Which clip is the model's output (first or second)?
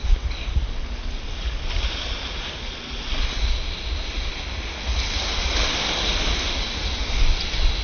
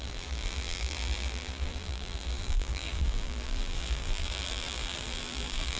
second